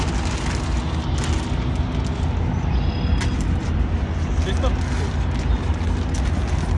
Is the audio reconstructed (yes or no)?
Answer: no